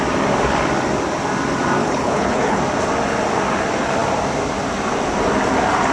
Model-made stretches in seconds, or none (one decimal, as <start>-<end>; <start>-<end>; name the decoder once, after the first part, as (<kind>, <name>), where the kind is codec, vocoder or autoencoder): 1.8-2.6 (codec, HILCodec)